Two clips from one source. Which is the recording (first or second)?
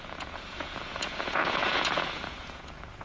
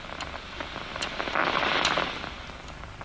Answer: second